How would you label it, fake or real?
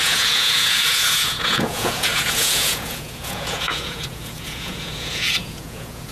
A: fake